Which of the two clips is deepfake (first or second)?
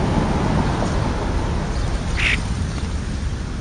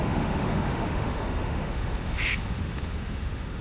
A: second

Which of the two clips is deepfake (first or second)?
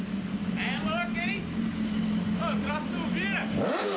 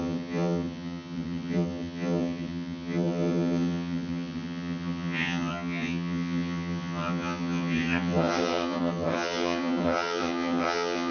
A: second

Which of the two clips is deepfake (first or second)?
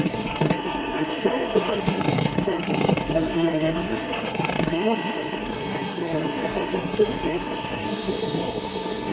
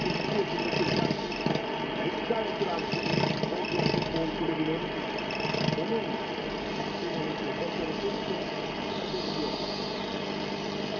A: first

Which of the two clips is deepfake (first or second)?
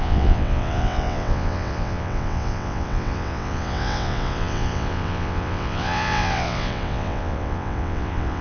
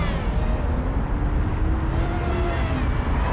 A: first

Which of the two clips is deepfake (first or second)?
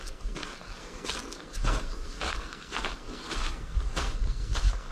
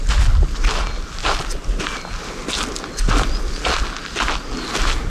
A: first